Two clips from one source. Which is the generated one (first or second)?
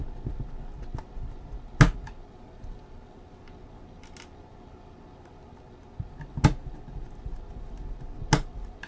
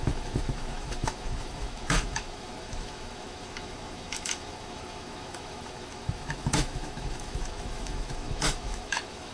second